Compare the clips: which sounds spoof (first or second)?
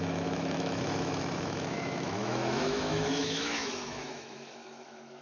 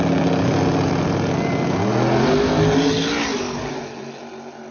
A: first